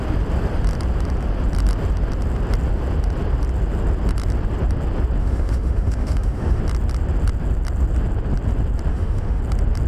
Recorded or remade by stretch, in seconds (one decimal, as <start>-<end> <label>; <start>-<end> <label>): 0.0-5.2 recorded; 5.2-6.6 remade; 6.6-8.9 recorded; 8.9-9.4 remade; 9.4-9.9 recorded